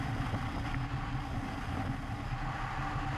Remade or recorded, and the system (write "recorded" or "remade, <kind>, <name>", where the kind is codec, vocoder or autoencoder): recorded